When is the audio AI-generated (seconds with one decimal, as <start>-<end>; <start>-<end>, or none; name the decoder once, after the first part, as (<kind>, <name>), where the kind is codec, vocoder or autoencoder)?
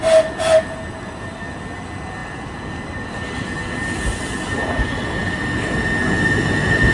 none